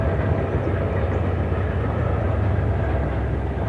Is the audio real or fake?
real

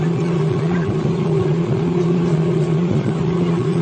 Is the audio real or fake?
fake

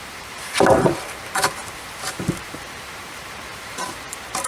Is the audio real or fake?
fake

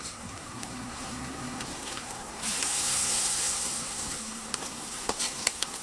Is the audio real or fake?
fake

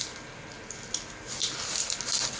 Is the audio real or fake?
real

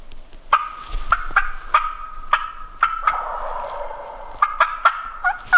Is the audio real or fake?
real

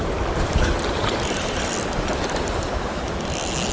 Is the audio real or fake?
real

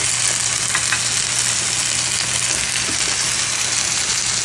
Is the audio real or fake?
real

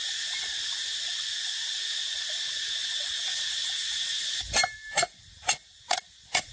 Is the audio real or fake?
real